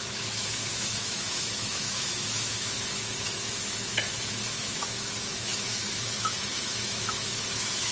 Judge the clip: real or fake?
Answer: fake